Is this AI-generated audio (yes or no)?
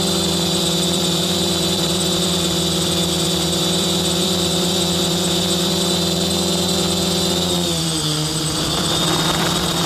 yes